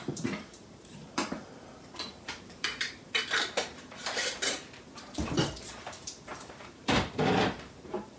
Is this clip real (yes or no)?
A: no